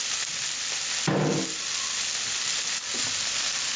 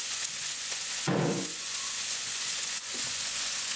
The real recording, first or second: first